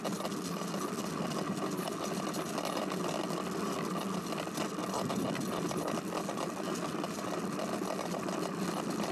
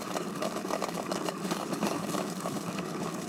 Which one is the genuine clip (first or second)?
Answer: first